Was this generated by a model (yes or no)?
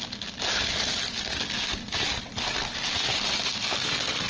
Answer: no